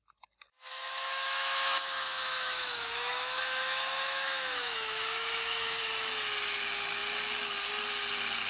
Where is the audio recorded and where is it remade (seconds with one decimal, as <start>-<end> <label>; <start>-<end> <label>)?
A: 0.0-0.7 recorded; 0.7-5.8 remade; 5.8-8.5 recorded